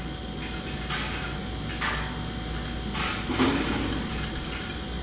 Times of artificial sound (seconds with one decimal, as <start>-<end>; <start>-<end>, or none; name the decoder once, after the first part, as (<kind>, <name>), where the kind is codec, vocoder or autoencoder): none